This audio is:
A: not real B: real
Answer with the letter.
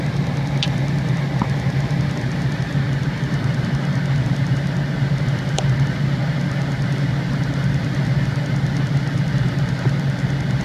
B